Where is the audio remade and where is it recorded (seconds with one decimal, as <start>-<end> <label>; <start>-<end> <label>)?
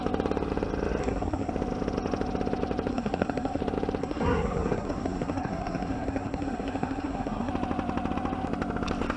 0.0-1.0 recorded; 1.0-1.5 remade; 1.5-2.9 recorded; 2.9-3.6 remade; 3.6-4.0 recorded; 4.0-7.5 remade; 7.5-9.2 recorded